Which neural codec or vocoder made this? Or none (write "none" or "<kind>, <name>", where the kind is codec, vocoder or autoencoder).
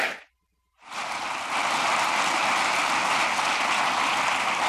none